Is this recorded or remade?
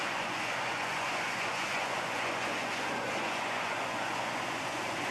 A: remade